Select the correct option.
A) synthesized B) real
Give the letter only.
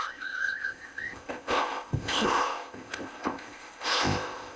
A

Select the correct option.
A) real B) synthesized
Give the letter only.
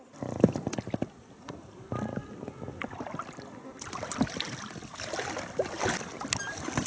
A